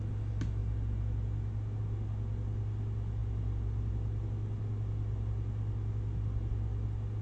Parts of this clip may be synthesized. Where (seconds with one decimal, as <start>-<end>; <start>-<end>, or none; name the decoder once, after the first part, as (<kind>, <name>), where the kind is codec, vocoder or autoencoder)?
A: none